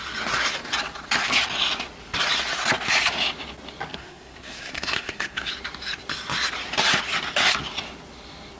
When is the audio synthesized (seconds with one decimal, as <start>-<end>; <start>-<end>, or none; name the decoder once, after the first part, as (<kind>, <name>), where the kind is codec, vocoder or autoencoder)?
3.9-5.5 (codec, SNAC)